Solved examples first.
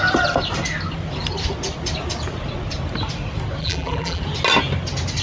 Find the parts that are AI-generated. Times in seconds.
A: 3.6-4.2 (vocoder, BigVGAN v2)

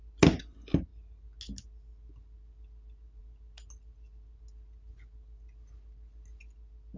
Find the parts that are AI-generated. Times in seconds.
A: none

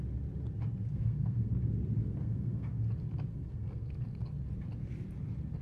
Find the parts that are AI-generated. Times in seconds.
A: 0.9-1.5 (codec, SNAC); 2.0-2.8; 3.3-3.9

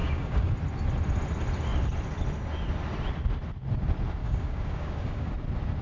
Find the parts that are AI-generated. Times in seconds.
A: 0.0-0.5 (codec, DAC); 4.2-5.3